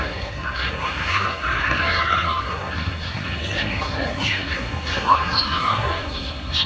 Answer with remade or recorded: remade